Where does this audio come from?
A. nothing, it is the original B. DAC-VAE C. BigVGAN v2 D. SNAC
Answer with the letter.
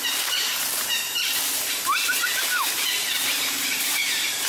C